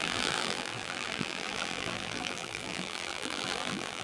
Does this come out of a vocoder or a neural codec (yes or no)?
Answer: yes